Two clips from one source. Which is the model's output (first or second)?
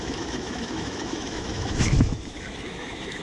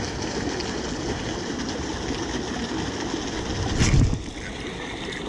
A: first